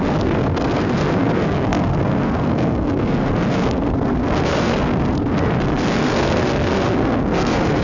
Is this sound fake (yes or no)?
yes